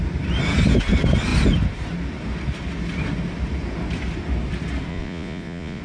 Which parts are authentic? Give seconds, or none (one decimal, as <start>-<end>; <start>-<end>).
0.0-4.9